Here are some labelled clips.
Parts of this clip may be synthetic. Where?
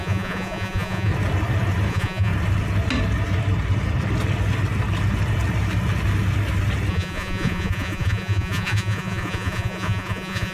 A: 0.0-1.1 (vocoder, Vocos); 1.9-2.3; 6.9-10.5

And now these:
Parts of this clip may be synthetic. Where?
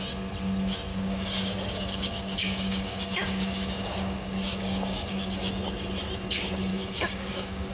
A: 0.9-5.5 (codec, DAC); 6.7-7.7